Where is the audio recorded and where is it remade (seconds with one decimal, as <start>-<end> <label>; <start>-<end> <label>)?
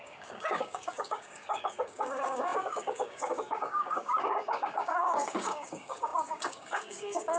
0.0-7.4 remade